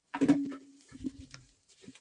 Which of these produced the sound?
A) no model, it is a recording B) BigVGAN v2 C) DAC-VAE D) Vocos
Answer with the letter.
B